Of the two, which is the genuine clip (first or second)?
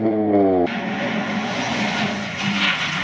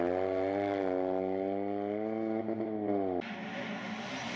second